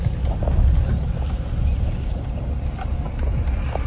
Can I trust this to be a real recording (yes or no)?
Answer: yes